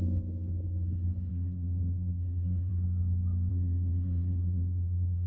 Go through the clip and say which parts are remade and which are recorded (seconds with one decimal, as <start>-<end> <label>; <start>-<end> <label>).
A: 0.0-1.3 recorded; 1.3-2.7 remade; 2.7-3.5 recorded; 3.5-5.3 remade